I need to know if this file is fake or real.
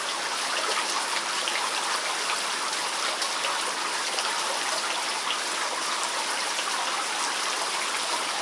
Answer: real